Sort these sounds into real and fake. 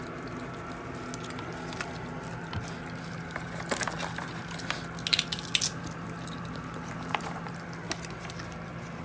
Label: real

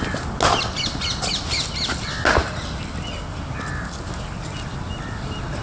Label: real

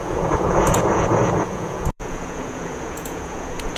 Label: fake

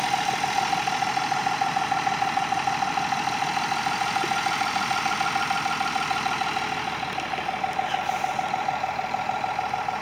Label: real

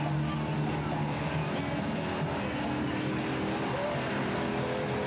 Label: real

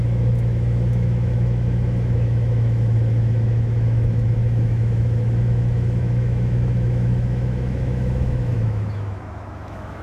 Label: fake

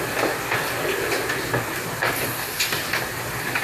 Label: real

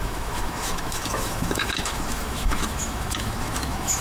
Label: fake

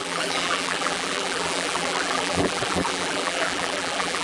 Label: fake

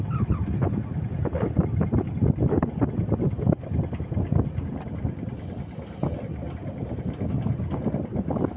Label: real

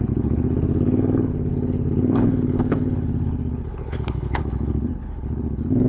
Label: fake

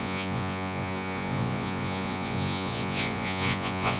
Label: fake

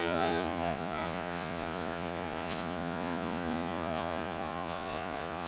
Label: fake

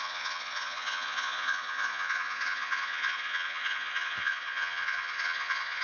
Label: fake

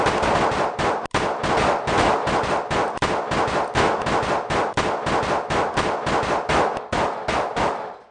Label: real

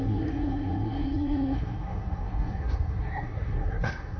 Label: fake